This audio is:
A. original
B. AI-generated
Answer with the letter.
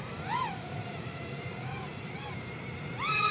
B